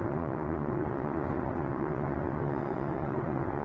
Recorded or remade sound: remade